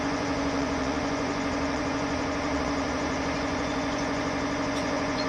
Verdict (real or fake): fake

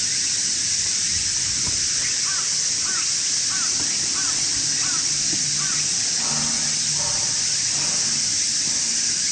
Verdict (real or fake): real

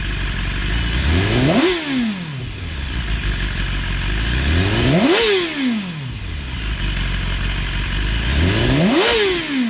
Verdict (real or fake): real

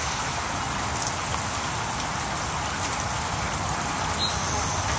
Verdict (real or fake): real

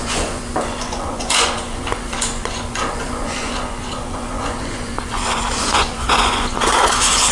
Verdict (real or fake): fake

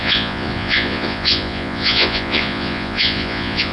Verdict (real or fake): fake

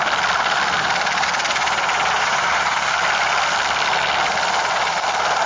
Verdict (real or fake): real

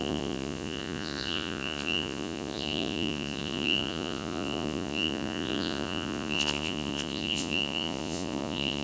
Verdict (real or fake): fake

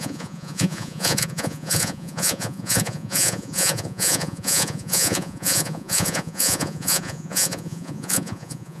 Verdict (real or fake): fake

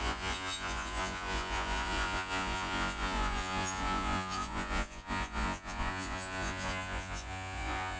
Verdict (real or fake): fake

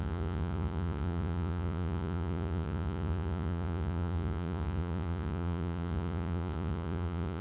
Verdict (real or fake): fake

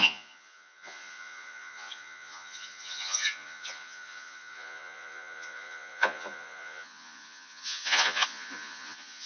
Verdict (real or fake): fake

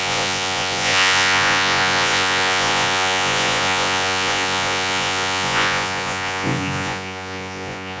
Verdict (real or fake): fake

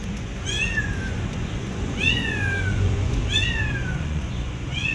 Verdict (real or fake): fake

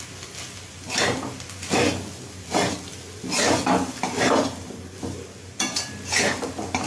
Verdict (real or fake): real